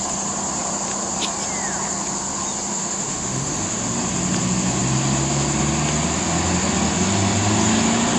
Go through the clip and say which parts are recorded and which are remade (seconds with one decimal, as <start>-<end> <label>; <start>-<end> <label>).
0.0-2.7 recorded; 2.7-3.8 remade; 3.8-8.2 recorded